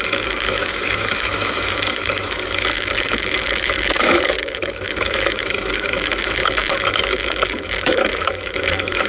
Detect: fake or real fake